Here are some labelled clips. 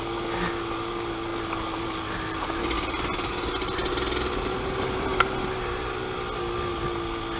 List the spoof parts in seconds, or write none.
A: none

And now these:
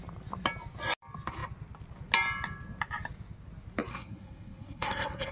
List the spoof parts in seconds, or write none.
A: 3.9-5.3 (codec, SNAC)

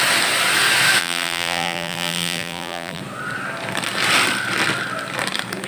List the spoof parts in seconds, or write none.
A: 1.0-3.0 (vocoder, BigVGAN v2)

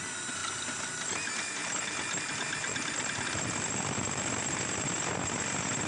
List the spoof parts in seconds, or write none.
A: 1.6-5.1 (vocoder, BigVGAN v2)

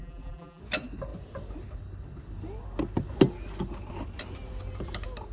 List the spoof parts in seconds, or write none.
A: 0.0-0.6 (vocoder, BigVGAN v2)

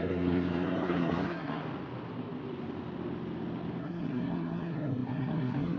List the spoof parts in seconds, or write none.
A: 0.0-1.6 (codec, SNAC); 3.8-5.8

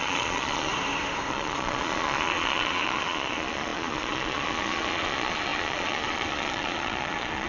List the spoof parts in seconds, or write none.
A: 0.0-0.7 (vocoder, Vocos); 1.3-7.5

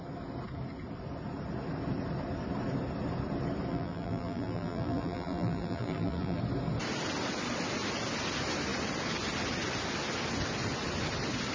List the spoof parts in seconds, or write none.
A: 3.7-6.4 (vocoder, BigVGAN v2)